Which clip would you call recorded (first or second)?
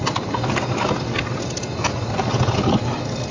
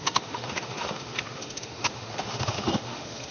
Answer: first